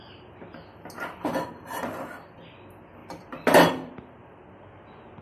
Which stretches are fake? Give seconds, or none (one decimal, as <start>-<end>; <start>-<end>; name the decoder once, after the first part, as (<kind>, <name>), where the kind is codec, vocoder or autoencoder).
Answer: 3.0-3.9 (vocoder, BigVGAN v2)